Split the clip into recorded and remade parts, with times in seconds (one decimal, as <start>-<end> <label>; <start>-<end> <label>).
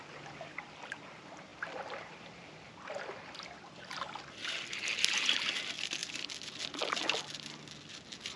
0.0-1.5 recorded; 1.5-2.4 remade; 2.4-8.4 recorded